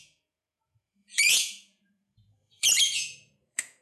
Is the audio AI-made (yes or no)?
yes